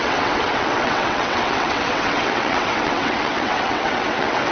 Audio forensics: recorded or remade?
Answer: remade